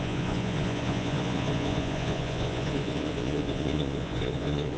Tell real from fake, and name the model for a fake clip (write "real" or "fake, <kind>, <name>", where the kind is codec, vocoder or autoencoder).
fake, vocoder, Vocos